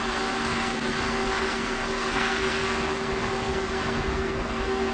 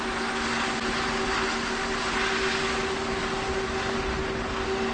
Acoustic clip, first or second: second